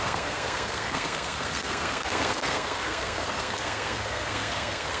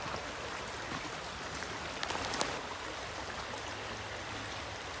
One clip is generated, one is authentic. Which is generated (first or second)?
first